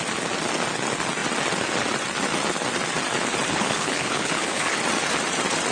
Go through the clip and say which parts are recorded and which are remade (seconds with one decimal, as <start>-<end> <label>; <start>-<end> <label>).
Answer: 0.0-3.5 recorded; 3.5-4.8 remade; 4.8-5.7 recorded